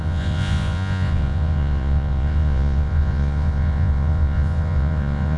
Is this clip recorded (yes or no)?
no